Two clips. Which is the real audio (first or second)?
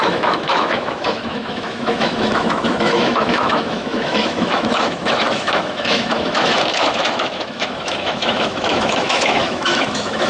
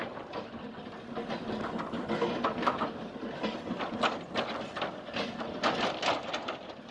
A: second